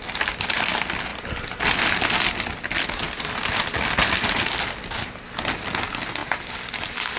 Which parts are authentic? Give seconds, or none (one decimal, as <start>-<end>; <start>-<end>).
0.0-7.2